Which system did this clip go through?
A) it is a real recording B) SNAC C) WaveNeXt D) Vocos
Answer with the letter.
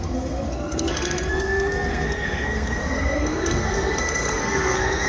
B